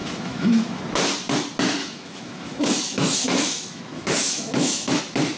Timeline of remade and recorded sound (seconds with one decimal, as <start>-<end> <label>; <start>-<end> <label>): 0.0-0.8 remade; 0.8-1.8 recorded; 1.8-5.0 remade; 5.0-5.4 recorded